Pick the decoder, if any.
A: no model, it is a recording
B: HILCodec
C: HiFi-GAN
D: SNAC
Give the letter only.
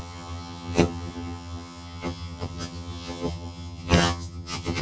C